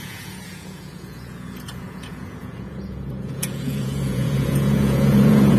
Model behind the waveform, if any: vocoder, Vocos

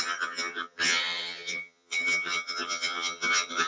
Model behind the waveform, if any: vocoder, HiFi-GAN